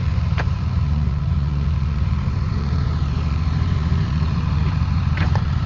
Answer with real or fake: fake